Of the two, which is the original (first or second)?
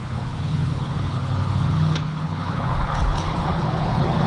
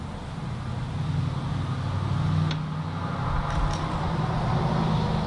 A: second